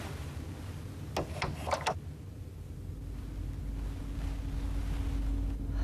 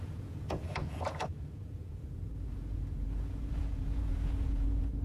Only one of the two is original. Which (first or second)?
first